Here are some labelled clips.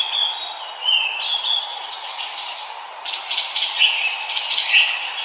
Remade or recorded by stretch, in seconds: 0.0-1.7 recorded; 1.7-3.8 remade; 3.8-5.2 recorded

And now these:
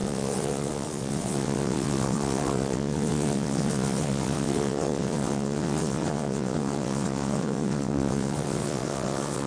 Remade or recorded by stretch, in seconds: 0.0-9.5 remade

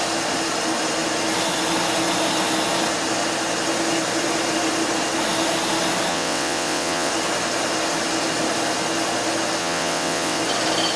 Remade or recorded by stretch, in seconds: 0.0-6.1 recorded; 6.1-7.1 remade; 7.1-9.6 recorded; 9.6-10.4 remade; 10.4-11.0 recorded

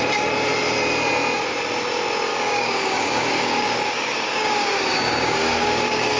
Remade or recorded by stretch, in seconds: 0.0-2.3 recorded; 2.3-6.2 remade